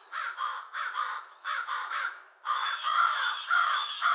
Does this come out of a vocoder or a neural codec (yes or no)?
yes